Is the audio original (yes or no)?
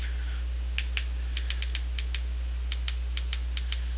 yes